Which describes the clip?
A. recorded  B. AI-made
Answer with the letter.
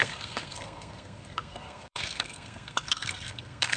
B